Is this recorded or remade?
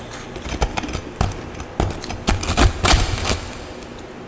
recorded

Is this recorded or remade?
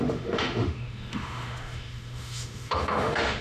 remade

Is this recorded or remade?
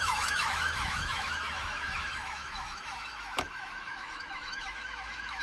remade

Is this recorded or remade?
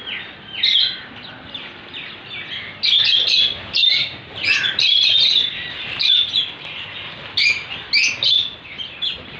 recorded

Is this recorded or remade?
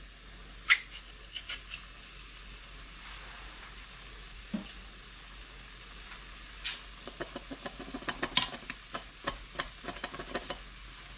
recorded